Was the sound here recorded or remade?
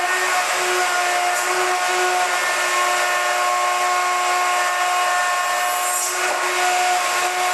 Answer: recorded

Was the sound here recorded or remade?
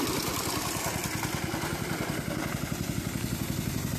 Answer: recorded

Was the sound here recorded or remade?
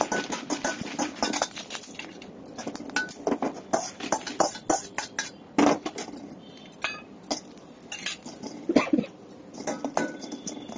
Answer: recorded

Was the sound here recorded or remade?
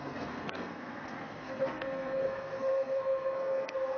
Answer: remade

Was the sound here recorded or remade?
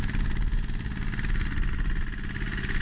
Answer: recorded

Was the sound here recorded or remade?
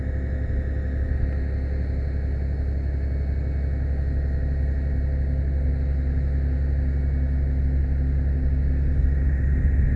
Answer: recorded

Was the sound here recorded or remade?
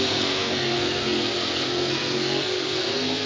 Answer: remade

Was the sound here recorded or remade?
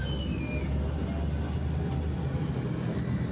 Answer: recorded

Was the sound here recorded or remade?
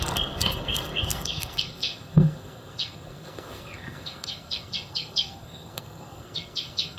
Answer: remade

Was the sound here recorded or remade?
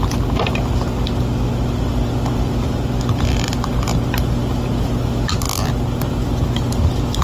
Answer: recorded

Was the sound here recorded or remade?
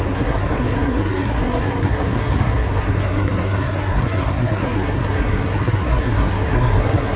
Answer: remade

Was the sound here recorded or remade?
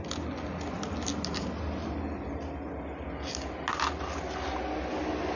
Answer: recorded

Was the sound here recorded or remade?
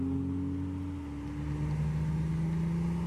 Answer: recorded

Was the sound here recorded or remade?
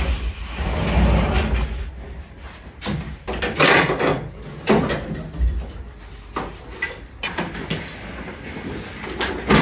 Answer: recorded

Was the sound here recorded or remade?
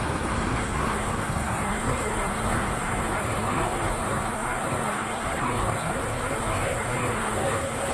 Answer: remade